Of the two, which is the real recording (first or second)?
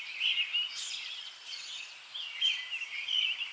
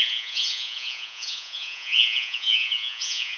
first